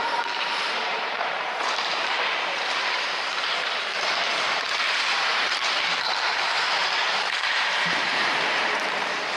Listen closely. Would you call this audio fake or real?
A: fake